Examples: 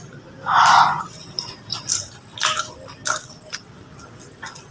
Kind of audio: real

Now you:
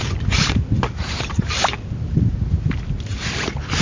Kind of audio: real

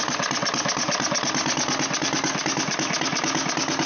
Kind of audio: real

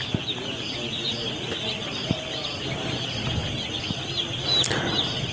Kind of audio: real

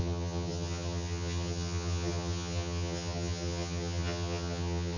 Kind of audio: fake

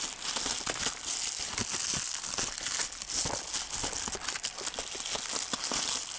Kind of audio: real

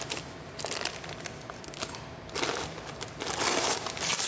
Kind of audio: real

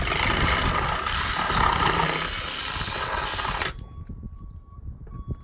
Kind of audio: real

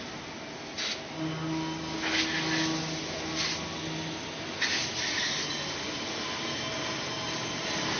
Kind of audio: real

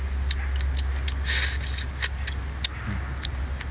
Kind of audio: real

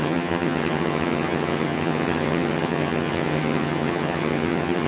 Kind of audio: fake